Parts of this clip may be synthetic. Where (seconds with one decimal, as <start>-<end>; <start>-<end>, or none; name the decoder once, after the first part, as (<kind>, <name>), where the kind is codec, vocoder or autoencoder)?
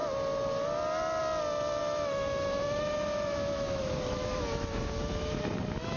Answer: 1.8-5.4 (autoencoder, DAC-VAE)